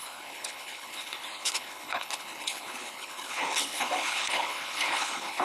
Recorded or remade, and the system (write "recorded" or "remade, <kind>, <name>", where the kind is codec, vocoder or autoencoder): remade, codec, HILCodec